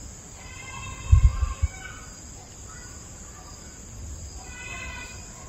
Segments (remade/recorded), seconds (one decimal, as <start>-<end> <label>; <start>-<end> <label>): 0.0-5.5 recorded